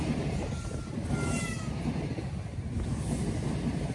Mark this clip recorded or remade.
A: recorded